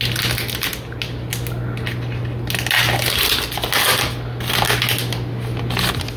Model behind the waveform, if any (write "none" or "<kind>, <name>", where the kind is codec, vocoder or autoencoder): none